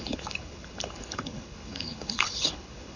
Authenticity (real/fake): fake